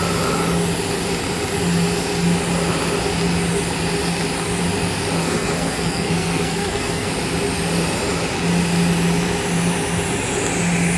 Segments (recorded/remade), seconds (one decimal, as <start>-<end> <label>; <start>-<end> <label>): 0.0-5.2 recorded; 5.2-7.1 remade; 7.1-11.0 recorded